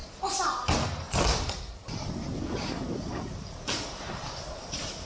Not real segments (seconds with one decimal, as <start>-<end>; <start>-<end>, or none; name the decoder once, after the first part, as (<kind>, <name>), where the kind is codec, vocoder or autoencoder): 1.3-5.1 (vocoder, BigVGAN v2)